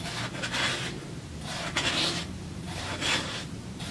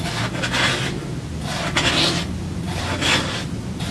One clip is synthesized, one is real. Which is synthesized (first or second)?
first